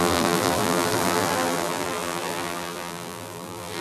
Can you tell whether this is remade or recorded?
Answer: remade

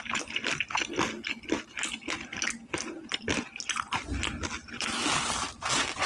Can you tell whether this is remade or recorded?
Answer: recorded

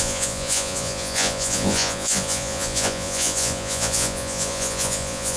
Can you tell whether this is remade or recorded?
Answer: remade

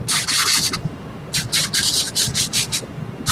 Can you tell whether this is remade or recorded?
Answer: recorded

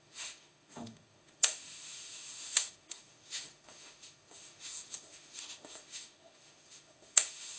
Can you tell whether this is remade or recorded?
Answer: remade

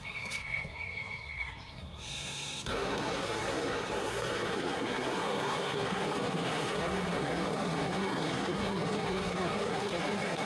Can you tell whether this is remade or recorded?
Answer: remade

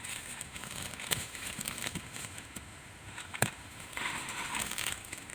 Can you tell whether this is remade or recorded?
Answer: remade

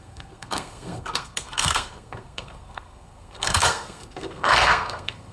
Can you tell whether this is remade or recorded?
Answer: remade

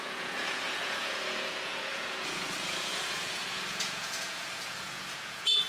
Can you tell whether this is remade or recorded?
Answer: remade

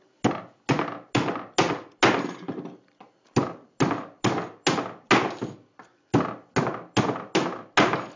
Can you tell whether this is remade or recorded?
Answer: recorded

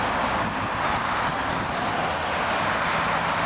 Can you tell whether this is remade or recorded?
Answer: recorded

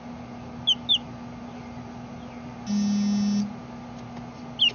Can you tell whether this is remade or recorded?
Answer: recorded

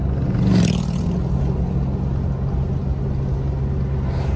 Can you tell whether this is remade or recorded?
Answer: recorded